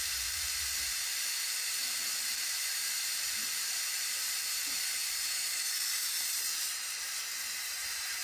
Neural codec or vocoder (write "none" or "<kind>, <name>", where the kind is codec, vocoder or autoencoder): vocoder, BigVGAN v2